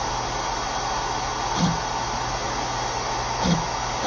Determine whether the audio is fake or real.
real